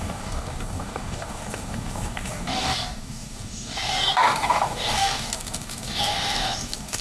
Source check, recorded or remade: remade